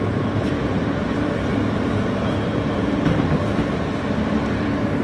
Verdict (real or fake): fake